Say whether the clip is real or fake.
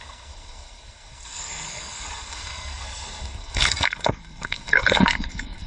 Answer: fake